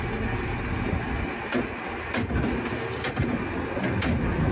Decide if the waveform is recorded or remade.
recorded